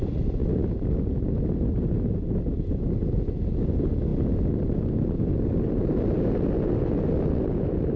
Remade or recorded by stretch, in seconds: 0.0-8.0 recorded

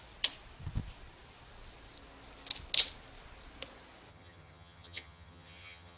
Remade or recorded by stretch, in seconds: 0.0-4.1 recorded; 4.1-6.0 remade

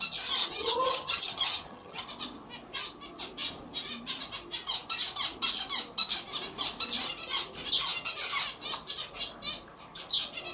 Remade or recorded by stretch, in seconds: 0.0-0.4 recorded; 0.4-2.0 remade; 2.0-10.5 recorded